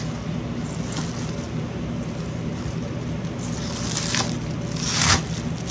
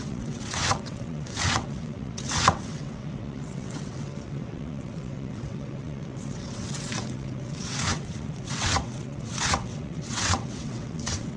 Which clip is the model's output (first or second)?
second